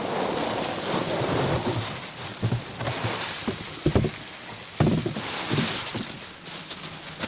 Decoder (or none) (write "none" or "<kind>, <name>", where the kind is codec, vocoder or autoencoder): none